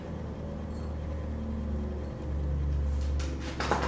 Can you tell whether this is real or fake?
real